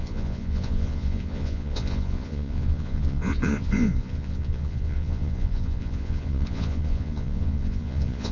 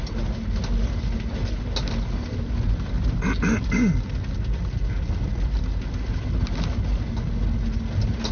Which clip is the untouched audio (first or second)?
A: second